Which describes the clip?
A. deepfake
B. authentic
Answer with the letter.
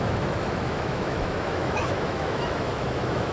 A